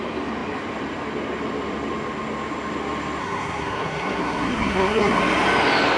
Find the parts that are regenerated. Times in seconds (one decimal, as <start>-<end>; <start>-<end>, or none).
3.2-5.2